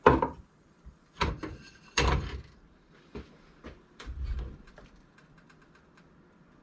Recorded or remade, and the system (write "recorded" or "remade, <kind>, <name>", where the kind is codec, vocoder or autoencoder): remade, vocoder, BigVGAN v2